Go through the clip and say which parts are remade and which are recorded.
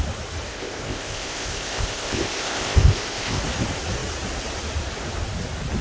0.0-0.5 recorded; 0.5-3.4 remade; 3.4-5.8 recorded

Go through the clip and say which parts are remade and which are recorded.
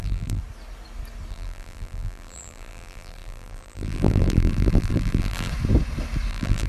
0.0-0.4 remade; 0.4-1.3 recorded; 1.3-5.5 remade; 5.5-6.3 recorded; 6.3-6.7 remade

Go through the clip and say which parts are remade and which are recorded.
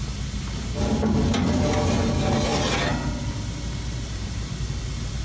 0.0-5.2 recorded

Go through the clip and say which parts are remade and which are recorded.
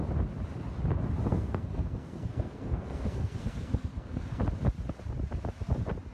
0.0-1.3 recorded; 1.3-4.4 remade; 4.4-6.1 recorded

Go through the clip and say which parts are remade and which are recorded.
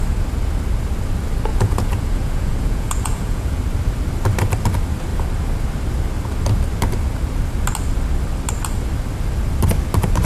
0.0-1.5 recorded; 1.5-3.6 remade; 3.6-10.3 recorded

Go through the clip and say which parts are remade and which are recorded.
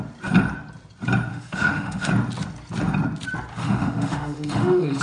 0.0-1.3 recorded; 1.3-2.1 remade; 2.1-3.5 recorded; 3.5-5.0 remade